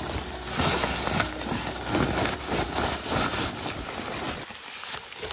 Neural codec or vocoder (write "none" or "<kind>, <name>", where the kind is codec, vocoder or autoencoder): none